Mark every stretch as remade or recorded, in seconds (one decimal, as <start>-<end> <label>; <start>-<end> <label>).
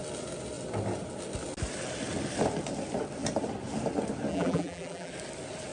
0.0-4.3 recorded; 4.3-5.1 remade; 5.1-5.7 recorded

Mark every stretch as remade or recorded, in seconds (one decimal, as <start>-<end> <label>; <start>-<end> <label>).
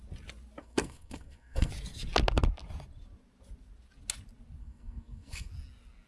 0.0-0.6 recorded; 0.6-1.7 remade; 1.7-4.6 recorded; 4.6-5.5 remade; 5.5-6.1 recorded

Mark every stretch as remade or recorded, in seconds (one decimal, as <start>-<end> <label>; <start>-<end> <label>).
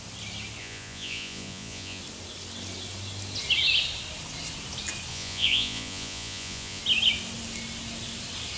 0.0-0.6 recorded; 0.6-2.0 remade; 2.0-5.1 recorded; 5.1-6.8 remade; 6.8-8.6 recorded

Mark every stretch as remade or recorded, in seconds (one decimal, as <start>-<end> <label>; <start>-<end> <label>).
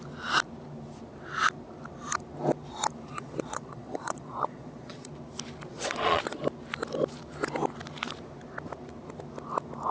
0.0-3.1 recorded; 3.1-5.1 remade; 5.1-5.7 recorded; 5.7-6.4 remade; 6.4-9.9 recorded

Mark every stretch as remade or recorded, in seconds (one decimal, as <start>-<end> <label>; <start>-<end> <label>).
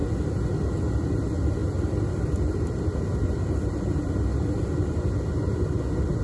0.0-6.2 recorded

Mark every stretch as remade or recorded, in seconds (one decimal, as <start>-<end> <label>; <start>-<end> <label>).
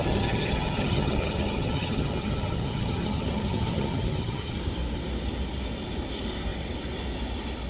0.0-4.6 remade; 4.6-7.7 recorded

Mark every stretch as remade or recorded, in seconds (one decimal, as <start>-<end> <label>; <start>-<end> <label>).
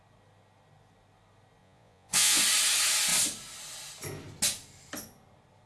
0.0-1.6 recorded; 1.6-2.4 remade; 2.4-5.7 recorded